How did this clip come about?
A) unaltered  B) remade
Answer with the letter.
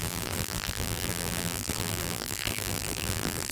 B